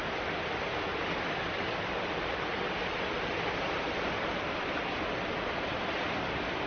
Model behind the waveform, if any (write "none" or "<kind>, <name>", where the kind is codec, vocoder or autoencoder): none